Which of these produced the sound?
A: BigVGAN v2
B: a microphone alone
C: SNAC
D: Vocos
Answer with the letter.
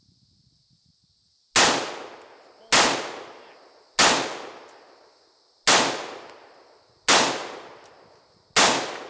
B